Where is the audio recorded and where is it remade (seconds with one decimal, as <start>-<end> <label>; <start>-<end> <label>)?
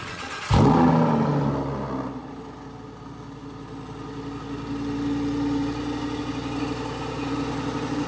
0.0-0.5 remade; 0.5-8.1 recorded